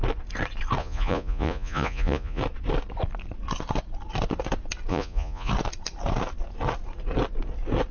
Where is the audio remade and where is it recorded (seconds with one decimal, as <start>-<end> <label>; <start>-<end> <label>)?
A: 0.0-0.8 recorded; 0.8-2.4 remade; 2.4-4.9 recorded; 4.9-5.5 remade; 5.5-7.9 recorded